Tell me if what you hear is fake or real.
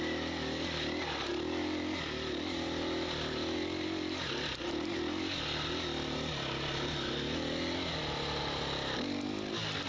real